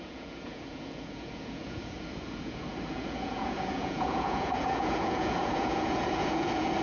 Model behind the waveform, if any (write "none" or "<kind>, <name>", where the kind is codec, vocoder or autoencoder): vocoder, Vocos